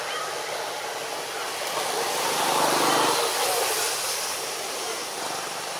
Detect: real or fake real